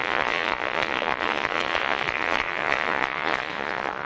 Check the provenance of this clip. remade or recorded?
remade